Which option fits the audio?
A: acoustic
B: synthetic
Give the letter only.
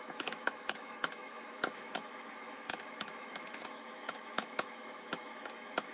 B